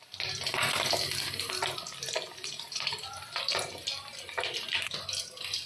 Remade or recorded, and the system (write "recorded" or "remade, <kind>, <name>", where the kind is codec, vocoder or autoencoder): recorded